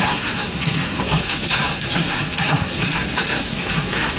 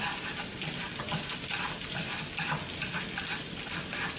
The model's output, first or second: first